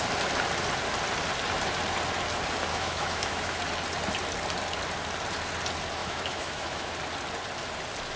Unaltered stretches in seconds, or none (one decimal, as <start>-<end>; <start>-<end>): 0.0-2.7; 3.6-6.0; 6.9-8.2

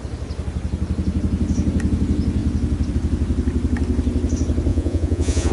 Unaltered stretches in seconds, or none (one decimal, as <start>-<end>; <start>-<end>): 0.0-4.7

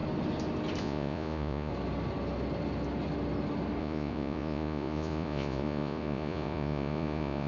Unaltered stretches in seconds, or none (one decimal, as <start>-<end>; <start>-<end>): 0.0-0.8; 1.7-3.8

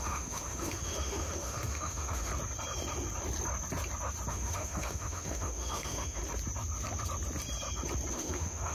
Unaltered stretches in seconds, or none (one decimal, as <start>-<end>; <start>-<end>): 2.3-4.3; 6.2-8.1

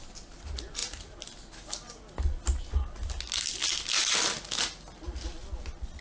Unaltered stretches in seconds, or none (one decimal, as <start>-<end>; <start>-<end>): 0.0-6.0

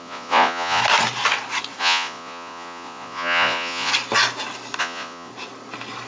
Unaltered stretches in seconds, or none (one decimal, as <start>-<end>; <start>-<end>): 0.8-1.8; 3.9-4.8; 5.3-6.1

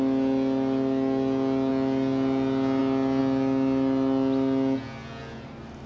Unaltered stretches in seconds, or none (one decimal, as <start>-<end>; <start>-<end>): 0.0-5.9

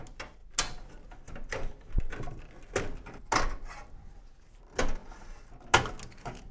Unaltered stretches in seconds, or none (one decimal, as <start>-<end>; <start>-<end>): 0.0-6.5